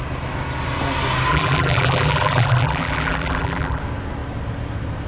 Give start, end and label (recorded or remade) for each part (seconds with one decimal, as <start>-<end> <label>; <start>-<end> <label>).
0.0-1.3 recorded; 1.3-3.8 remade; 3.8-5.1 recorded